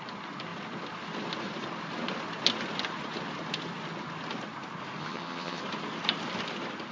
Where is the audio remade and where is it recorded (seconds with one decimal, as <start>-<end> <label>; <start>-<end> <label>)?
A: 0.0-5.0 recorded; 5.0-5.6 remade; 5.6-6.9 recorded